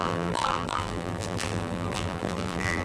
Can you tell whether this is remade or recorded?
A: remade